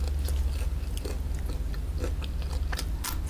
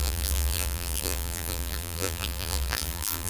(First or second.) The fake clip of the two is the second